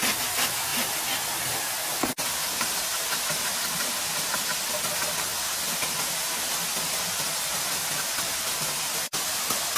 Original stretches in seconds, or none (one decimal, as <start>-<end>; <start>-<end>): 0.0-9.8